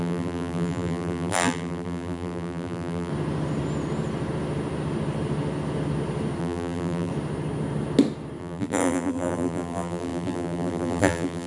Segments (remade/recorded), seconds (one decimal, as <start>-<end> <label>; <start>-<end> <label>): 0.0-3.1 remade; 3.1-6.4 recorded; 6.4-7.1 remade; 7.1-8.4 recorded; 8.4-11.5 remade